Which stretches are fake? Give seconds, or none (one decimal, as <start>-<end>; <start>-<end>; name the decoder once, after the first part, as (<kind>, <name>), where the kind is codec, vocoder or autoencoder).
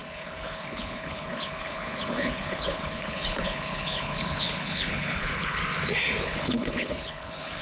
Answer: 0.0-5.6 (codec, HILCodec); 6.2-7.6